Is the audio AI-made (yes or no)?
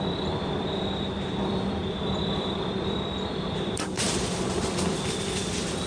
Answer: yes